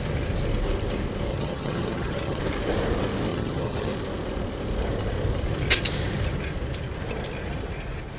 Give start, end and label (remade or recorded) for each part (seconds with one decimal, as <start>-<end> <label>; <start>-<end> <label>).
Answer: 0.0-1.3 recorded; 1.3-2.4 remade; 2.4-3.3 recorded; 3.3-3.9 remade; 3.9-8.2 recorded